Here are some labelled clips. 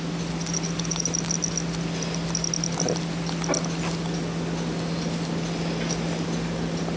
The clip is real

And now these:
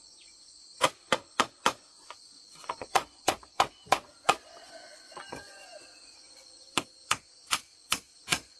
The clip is fake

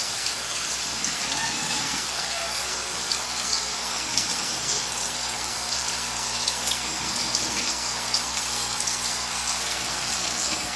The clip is fake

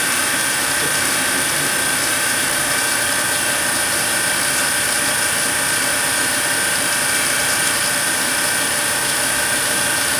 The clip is fake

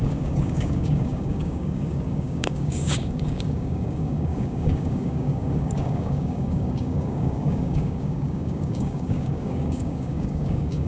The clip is fake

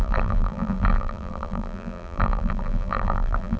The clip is fake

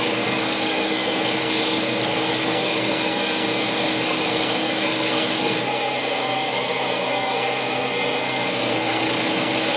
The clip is fake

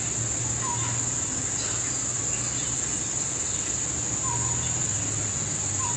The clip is real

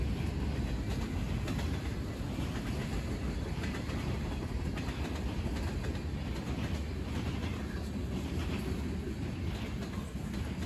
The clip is real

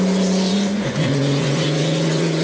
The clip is fake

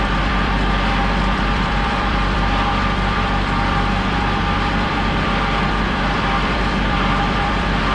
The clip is fake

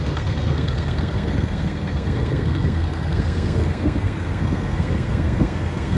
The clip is fake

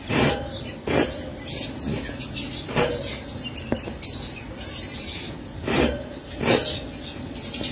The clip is real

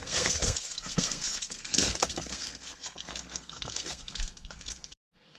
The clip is fake